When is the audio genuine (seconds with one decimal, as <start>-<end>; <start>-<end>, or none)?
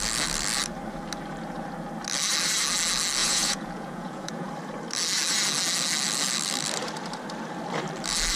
0.0-3.2; 4.5-8.4